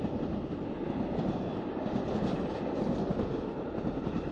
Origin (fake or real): real